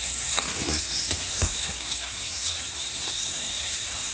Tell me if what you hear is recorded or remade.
remade